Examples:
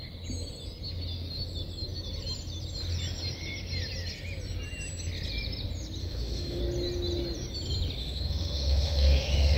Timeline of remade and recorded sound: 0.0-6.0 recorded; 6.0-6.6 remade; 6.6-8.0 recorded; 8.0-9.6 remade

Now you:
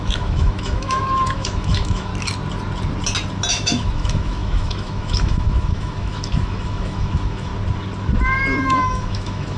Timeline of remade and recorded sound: 0.0-2.1 remade; 2.1-3.5 recorded; 3.5-7.5 remade; 7.5-8.6 recorded; 8.6-9.6 remade

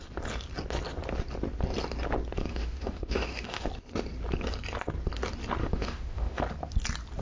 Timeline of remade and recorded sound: 0.0-2.4 recorded; 2.4-3.7 remade; 3.7-5.6 recorded; 5.6-6.4 remade; 6.4-7.2 recorded

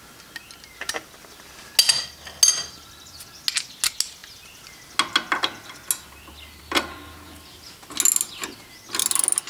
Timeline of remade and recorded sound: 0.0-9.5 recorded

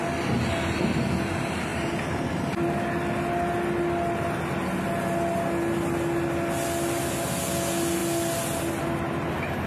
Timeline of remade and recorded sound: 0.0-9.7 recorded

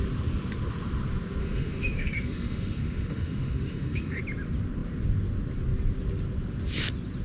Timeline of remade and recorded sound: 0.0-1.4 recorded; 1.4-4.2 remade; 4.2-7.2 recorded

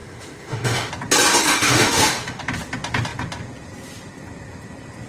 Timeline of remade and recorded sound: 0.0-0.9 remade; 0.9-1.3 recorded; 1.3-2.4 remade; 2.4-5.1 recorded